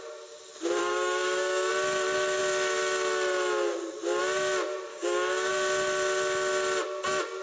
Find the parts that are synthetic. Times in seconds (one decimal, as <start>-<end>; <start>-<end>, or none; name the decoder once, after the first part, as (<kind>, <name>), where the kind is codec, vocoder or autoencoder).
0.8-1.7 (codec, DAC); 4.9-5.5